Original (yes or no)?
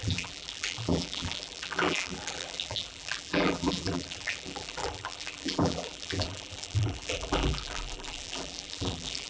no